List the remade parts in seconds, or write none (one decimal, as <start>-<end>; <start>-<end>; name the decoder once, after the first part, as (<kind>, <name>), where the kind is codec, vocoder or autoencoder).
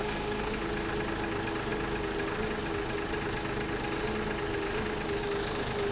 0.0-0.5 (codec, SNAC)